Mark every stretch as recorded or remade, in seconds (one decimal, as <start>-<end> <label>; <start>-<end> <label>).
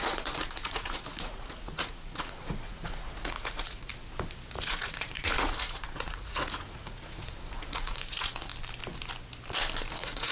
0.0-3.9 remade; 3.9-4.6 recorded; 4.6-8.5 remade; 8.5-9.9 recorded; 9.9-10.3 remade